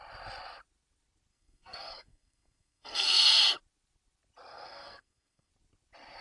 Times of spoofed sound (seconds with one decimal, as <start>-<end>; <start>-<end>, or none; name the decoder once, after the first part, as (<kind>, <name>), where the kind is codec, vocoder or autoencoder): 1.3-3.4 (codec, SNAC); 4.5-5.5